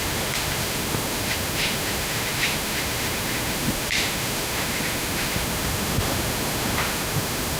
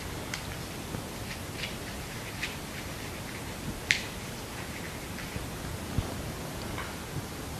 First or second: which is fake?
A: first